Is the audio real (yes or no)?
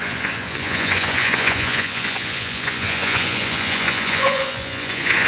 no